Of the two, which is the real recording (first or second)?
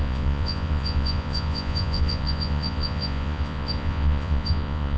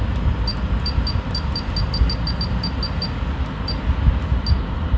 second